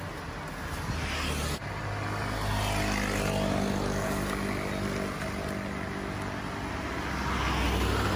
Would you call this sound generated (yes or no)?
no